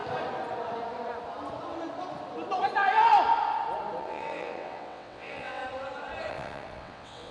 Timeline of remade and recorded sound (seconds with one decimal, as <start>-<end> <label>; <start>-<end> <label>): 0.0-4.0 recorded; 4.0-5.6 remade; 5.6-6.3 recorded; 6.3-7.3 remade